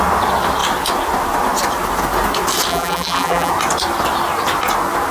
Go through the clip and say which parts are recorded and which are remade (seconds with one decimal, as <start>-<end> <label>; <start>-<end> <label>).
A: 0.0-2.7 recorded; 2.7-3.5 remade; 3.5-5.1 recorded